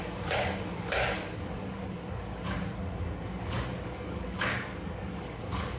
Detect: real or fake fake